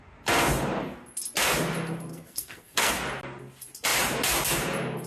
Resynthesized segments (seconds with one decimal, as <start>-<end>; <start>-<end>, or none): 2.1-2.9